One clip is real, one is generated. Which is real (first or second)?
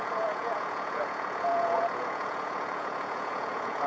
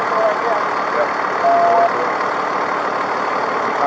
second